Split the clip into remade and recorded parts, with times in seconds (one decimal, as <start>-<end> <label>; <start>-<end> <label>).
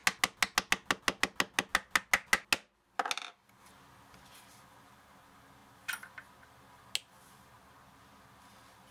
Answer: 0.0-8.9 recorded